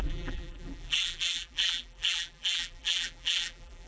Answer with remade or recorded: remade